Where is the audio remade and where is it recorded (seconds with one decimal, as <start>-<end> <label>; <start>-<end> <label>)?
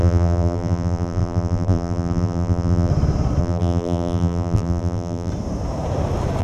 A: 0.0-2.9 remade; 2.9-3.4 recorded; 3.4-5.3 remade; 5.3-6.4 recorded